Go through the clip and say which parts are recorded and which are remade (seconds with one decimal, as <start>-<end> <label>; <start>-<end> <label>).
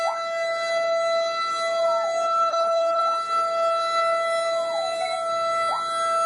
0.0-2.5 recorded; 2.5-3.0 remade; 3.0-6.3 recorded